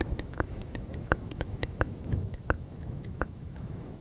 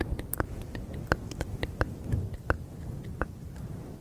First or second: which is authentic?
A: second